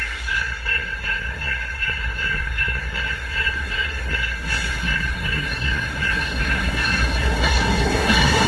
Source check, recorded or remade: remade